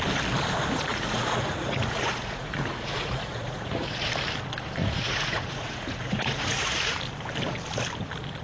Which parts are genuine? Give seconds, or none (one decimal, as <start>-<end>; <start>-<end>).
0.0-0.9; 4.1-4.8; 7.0-8.4

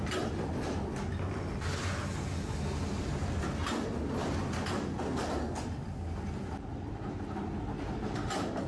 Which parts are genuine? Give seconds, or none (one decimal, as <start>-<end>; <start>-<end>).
0.0-8.7

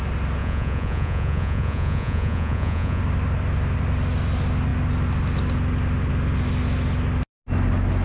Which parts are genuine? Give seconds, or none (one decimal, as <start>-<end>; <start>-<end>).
0.0-0.4; 3.0-8.0

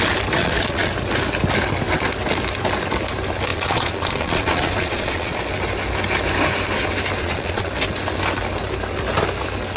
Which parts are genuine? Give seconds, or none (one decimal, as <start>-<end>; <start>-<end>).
0.0-0.4; 0.9-3.5; 5.4-7.2; 7.7-9.8